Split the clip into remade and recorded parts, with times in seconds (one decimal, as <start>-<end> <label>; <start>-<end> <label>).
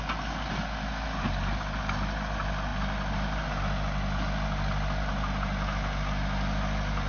0.0-7.1 recorded